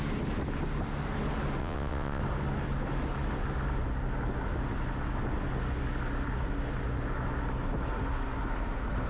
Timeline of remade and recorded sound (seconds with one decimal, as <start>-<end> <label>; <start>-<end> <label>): 0.0-1.6 recorded; 1.6-2.2 remade; 2.2-9.1 recorded